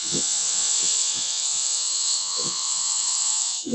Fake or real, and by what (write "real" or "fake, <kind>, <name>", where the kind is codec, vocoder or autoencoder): fake, vocoder, Vocos